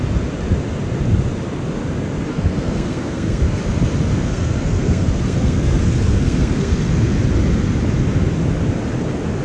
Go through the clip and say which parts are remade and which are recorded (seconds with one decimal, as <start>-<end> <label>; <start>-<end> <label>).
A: 0.0-2.3 recorded; 2.3-3.6 remade; 3.6-4.1 recorded; 4.1-7.2 remade; 7.2-9.4 recorded